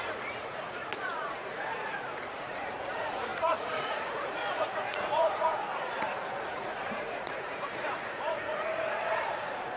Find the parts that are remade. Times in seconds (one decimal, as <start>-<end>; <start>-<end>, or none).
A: 0.0-9.8